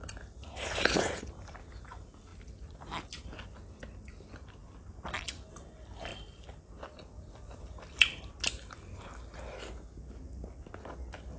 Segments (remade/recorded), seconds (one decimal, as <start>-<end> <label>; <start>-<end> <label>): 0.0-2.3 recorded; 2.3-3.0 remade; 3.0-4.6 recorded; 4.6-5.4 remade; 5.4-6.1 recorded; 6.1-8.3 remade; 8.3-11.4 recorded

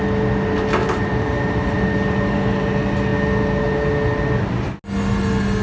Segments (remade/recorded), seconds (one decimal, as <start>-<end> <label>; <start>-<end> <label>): 0.0-0.8 recorded; 0.8-2.7 remade; 2.7-5.6 recorded

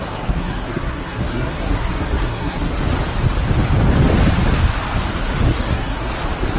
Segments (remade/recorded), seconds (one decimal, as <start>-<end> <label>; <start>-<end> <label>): 0.0-2.8 remade; 2.8-5.5 recorded; 5.5-6.1 remade; 6.1-6.6 recorded

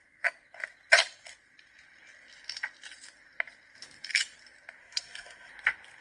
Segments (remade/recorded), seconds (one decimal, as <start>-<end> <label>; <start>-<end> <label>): 0.0-4.8 recorded; 4.8-5.5 remade; 5.5-6.0 recorded

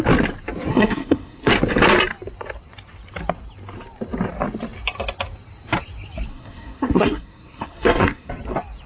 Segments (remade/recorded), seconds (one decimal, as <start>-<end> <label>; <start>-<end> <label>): 0.0-0.7 recorded; 0.7-1.5 remade; 1.5-6.3 recorded; 6.3-8.3 remade; 8.3-8.9 recorded

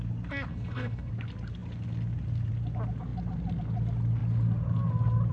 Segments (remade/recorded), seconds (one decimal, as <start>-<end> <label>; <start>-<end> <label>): 0.0-0.5 recorded; 0.5-1.1 remade; 1.1-5.3 recorded

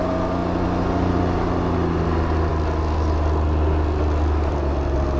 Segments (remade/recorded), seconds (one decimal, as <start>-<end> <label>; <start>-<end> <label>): 0.0-5.2 recorded

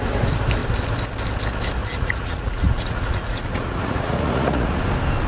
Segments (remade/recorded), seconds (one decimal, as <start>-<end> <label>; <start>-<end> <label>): 0.0-1.8 recorded; 1.8-4.8 remade; 4.8-5.3 recorded